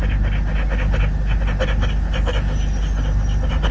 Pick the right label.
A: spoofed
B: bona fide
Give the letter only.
B